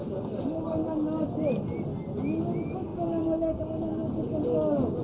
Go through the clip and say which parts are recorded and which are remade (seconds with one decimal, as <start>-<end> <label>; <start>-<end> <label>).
0.0-5.0 recorded